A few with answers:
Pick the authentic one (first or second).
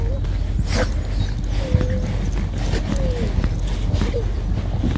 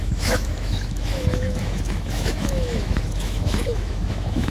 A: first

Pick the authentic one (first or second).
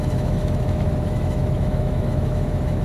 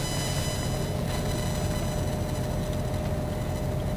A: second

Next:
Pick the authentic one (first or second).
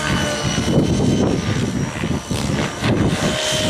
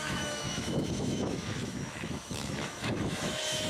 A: first